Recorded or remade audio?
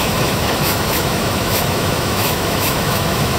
remade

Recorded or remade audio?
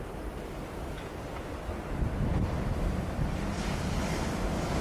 remade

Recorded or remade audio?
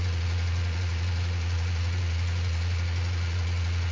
remade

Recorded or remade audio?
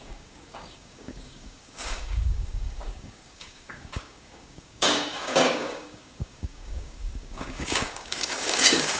remade